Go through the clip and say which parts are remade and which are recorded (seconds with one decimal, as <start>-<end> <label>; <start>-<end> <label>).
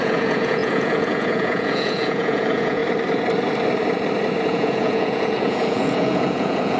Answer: 0.0-2.8 remade; 2.8-4.5 recorded; 4.5-6.8 remade